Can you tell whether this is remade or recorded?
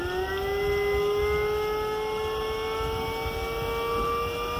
recorded